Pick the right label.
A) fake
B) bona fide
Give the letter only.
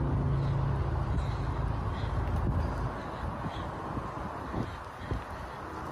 B